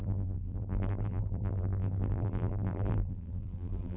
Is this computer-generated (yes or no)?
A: yes